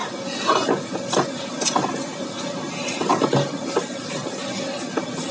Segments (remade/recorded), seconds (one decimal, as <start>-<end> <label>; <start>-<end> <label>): 0.0-3.1 recorded; 3.1-4.5 remade; 4.5-5.3 recorded